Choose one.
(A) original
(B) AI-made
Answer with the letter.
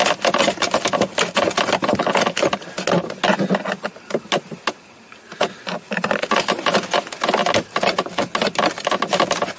A